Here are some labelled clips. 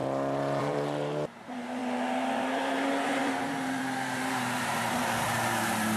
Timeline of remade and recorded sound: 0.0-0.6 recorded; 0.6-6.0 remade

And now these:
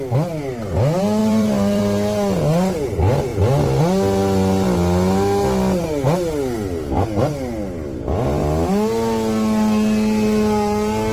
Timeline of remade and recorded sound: 0.0-1.2 recorded; 1.2-1.8 remade; 1.8-11.1 recorded